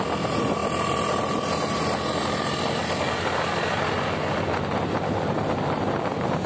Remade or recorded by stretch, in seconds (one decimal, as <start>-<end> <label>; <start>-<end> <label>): 0.0-6.5 recorded